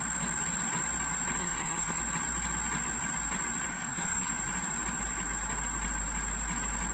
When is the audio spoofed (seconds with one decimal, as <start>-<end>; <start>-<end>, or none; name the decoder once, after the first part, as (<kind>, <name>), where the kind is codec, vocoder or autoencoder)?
1.4-2.0 (codec, SNAC); 3.7-4.3